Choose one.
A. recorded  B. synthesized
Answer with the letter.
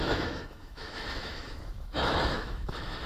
B